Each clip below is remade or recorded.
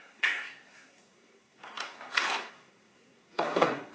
remade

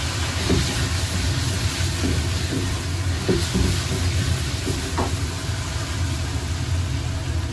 recorded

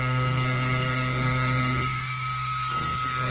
remade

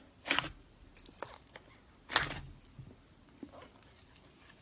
recorded